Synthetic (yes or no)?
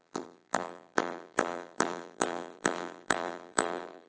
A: yes